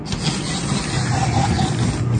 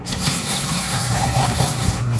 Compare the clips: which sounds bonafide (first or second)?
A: first